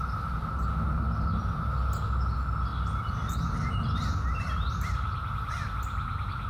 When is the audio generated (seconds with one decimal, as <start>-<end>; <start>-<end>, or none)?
none